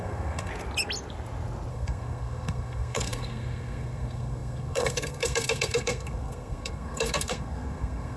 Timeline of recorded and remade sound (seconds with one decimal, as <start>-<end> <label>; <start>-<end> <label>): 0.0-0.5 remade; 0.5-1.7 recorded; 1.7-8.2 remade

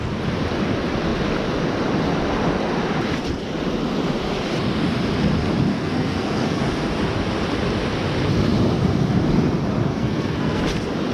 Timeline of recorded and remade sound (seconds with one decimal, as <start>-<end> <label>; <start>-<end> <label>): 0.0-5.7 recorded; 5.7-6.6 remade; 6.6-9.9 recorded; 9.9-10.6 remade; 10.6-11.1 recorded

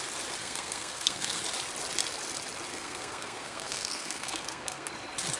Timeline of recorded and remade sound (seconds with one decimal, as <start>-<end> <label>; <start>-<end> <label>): 0.0-0.4 recorded; 0.4-1.4 remade; 1.4-2.7 recorded; 2.7-4.9 remade; 4.9-5.4 recorded

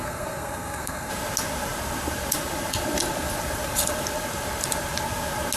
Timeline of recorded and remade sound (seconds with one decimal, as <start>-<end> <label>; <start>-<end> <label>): 0.0-1.1 remade; 1.1-5.6 recorded